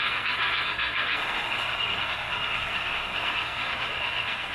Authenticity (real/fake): fake